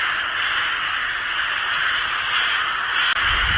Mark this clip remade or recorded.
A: recorded